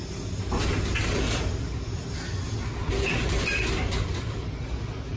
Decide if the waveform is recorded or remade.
recorded